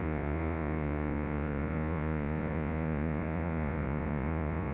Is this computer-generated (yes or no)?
yes